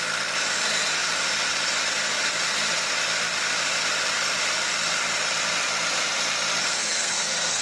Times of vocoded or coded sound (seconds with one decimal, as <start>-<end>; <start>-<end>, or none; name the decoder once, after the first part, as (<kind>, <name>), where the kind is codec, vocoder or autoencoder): 6.6-7.6 (codec, SNAC)